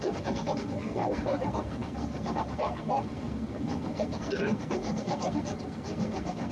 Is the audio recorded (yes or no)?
no